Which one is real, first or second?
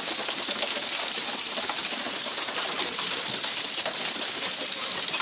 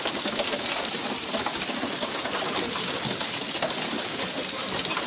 second